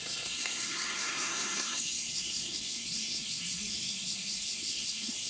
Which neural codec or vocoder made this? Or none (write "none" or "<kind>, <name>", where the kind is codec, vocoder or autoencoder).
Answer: codec, SNAC